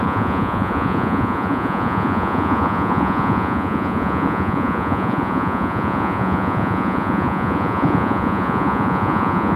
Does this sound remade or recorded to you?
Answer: remade